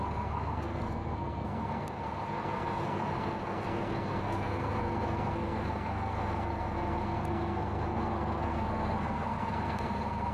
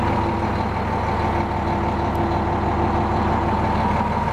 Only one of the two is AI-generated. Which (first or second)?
first